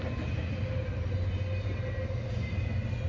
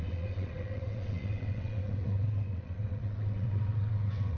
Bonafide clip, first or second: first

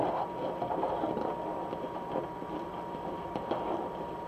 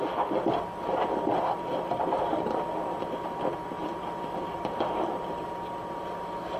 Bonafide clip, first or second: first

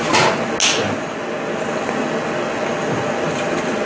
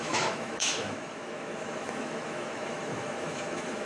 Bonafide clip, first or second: first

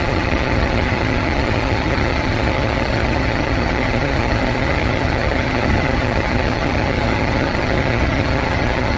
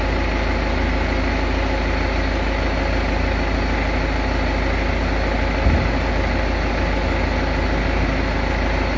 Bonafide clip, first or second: second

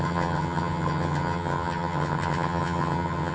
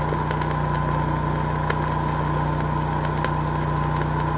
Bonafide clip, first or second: second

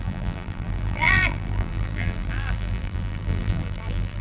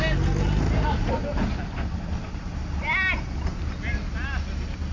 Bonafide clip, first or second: second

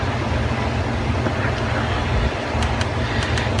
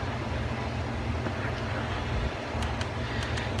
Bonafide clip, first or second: second